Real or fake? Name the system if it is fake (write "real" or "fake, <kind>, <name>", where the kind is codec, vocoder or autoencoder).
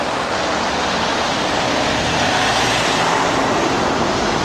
real